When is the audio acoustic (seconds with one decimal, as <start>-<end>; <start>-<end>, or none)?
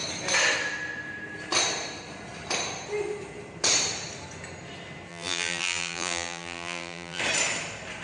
0.0-5.1; 7.2-8.0